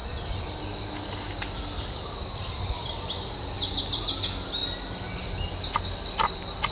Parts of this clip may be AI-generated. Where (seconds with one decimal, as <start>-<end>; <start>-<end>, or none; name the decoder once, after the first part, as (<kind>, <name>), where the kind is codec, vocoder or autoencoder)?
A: none

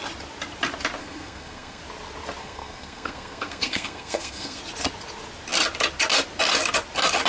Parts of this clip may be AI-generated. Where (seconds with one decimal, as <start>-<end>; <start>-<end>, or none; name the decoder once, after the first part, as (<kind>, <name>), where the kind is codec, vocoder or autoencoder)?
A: 1.0-1.8 (codec, SNAC); 2.4-4.6

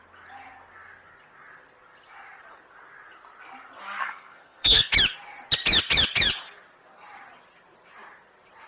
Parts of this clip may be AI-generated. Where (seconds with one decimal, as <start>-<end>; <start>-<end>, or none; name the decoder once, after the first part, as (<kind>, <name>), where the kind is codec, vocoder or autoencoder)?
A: 4.0-4.9 (codec, SNAC)

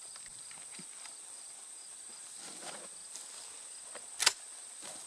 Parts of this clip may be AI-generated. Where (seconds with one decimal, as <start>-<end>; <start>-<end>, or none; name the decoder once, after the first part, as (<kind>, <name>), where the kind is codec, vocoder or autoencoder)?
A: none